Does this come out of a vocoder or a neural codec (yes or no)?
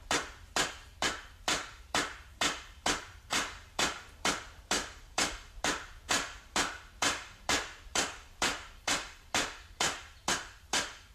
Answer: yes